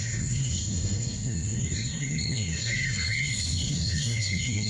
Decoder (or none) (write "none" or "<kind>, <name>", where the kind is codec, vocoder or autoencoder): codec, SNAC